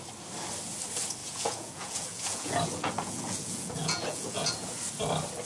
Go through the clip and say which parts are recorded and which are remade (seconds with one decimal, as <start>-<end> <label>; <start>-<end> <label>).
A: 0.0-1.2 recorded; 1.2-4.5 remade; 4.5-5.5 recorded